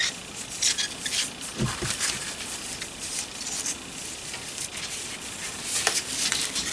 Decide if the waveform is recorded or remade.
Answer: remade